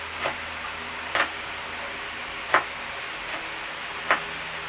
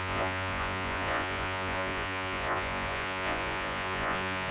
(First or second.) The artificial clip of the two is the second